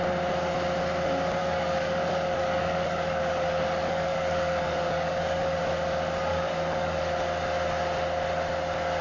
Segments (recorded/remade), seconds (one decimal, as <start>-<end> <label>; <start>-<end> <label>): 0.0-1.4 recorded; 1.4-5.6 remade; 5.6-6.3 recorded; 6.3-7.0 remade; 7.0-9.0 recorded